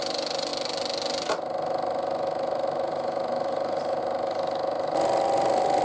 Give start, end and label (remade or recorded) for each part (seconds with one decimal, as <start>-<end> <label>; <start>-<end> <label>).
0.0-5.8 recorded